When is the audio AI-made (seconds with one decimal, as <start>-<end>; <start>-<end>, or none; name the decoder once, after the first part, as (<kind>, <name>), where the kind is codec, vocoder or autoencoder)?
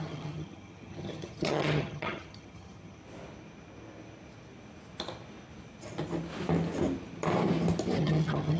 0.0-3.0 (vocoder, HiFi-GAN); 8.0-8.6